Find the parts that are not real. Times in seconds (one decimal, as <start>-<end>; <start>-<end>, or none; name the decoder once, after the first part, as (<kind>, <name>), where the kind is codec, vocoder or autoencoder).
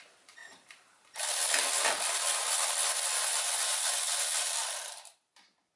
0.4-1.7 (vocoder, BigVGAN v2); 2.4-3.9; 4.6-5.8